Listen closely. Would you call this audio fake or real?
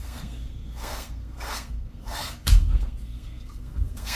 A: fake